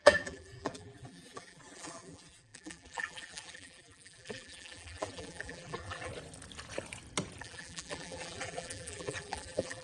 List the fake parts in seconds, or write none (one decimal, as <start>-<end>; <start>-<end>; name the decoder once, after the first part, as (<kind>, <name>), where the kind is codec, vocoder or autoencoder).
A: 0.0-6.1 (vocoder, BigVGAN v2); 7.4-9.8